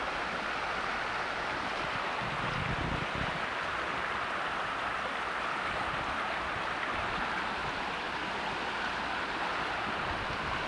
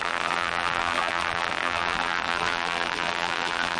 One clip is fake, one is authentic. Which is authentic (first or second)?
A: first